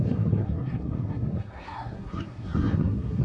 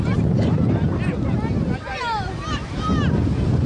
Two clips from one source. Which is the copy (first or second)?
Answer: first